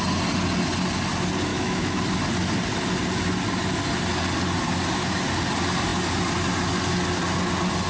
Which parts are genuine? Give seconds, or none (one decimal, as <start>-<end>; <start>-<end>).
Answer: 0.0-1.5; 2.0-7.9

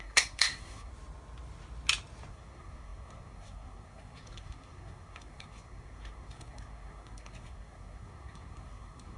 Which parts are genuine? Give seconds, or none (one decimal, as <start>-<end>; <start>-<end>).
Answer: 0.9-2.3

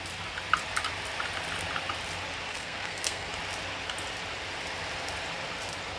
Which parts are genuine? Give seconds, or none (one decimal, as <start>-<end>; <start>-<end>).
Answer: 0.0-2.5; 3.3-6.0

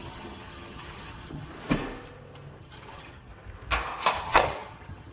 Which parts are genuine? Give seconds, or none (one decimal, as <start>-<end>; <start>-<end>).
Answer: 1.5-2.6; 3.3-4.2

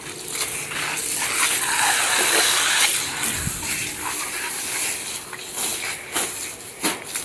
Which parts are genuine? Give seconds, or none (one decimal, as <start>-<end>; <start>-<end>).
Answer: 0.0-7.2

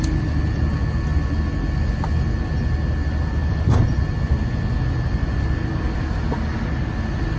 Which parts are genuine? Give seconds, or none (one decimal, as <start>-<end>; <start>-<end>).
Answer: 0.0-7.4

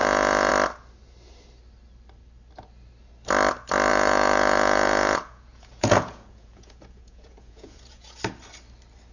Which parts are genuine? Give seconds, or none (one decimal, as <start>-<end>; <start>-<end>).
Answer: 0.5-3.9; 8.2-9.1

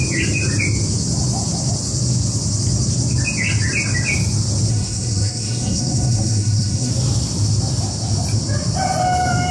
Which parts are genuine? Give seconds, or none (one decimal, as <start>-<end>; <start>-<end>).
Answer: 0.0-4.7; 6.9-9.5